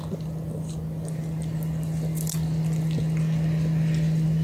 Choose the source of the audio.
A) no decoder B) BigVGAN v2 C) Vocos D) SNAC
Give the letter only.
A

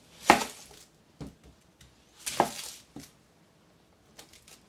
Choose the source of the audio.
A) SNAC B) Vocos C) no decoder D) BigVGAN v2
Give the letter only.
C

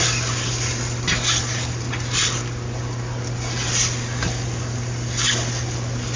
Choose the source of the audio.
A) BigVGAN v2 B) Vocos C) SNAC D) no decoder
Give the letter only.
D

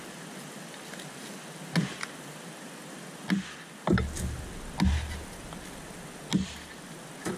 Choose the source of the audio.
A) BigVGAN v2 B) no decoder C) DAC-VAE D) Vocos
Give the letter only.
B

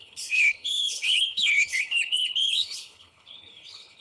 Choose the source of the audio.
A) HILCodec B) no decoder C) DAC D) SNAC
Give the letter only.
A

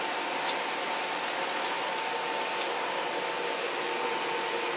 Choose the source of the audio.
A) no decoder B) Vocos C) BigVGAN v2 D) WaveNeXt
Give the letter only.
A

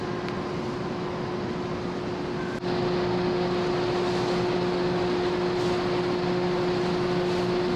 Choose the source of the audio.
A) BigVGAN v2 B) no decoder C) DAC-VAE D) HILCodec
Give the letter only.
B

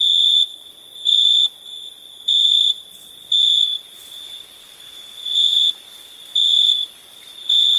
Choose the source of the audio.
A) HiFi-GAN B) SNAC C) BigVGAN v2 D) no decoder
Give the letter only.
C